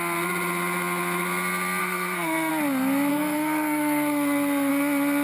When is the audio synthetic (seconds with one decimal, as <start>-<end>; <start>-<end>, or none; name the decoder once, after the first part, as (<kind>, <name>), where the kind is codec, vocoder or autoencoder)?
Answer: 1.8-2.5 (codec, SNAC); 3.1-4.7

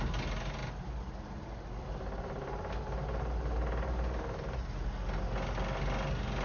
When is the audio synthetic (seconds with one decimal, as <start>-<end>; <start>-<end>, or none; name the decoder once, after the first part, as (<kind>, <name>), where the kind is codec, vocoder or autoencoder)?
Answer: none

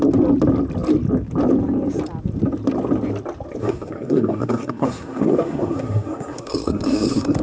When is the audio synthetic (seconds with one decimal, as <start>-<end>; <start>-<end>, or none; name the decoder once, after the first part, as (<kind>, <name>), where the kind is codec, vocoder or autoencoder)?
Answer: 3.6-7.4 (codec, SNAC)

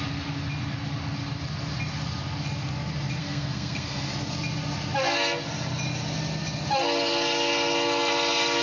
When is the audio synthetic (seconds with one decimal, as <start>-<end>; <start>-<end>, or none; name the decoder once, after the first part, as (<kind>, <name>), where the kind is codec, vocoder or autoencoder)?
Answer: 3.2-4.1 (codec, SNAC)

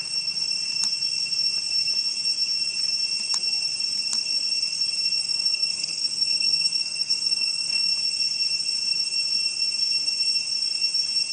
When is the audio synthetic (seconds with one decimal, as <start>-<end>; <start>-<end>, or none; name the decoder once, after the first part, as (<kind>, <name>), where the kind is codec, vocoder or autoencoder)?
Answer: 5.2-7.9 (codec, SNAC)

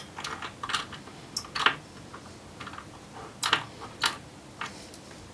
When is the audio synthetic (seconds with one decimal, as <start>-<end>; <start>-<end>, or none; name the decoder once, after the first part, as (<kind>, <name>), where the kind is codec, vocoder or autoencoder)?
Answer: none

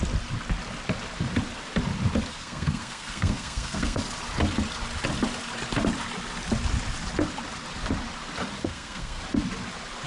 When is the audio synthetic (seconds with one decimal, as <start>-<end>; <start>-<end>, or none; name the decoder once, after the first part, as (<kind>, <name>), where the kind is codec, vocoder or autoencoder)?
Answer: 2.3-4.0 (codec, SNAC); 8.6-9.2